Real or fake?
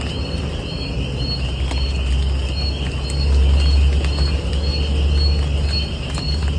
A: real